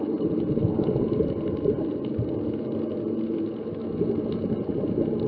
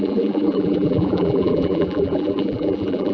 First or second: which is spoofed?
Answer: second